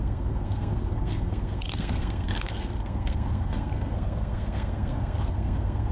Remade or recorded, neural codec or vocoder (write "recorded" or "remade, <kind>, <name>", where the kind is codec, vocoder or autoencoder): remade, codec, SNAC